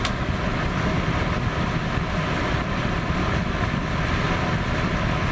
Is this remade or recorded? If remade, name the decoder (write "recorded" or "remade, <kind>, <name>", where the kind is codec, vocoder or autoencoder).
recorded